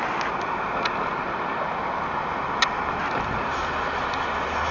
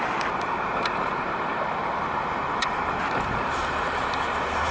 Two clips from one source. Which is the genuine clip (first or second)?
first